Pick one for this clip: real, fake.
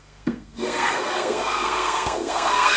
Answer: fake